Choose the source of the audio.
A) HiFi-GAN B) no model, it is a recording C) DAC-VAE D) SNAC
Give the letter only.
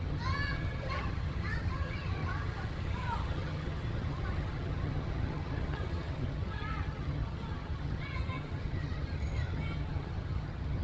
A